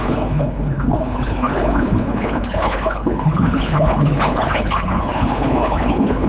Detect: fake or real fake